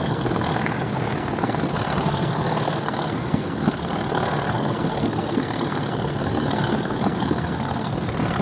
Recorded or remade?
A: remade